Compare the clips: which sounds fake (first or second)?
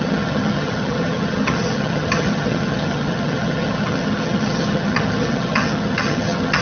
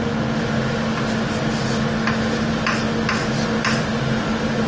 first